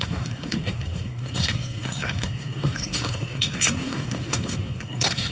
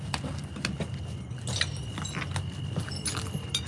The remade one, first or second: first